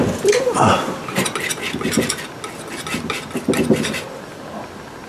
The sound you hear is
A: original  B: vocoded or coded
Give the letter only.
A